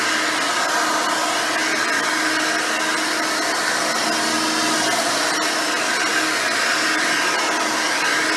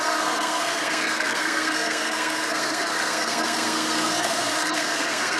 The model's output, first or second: second